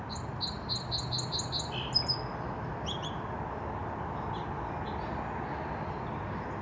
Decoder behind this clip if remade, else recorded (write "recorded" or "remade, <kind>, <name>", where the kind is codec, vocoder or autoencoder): recorded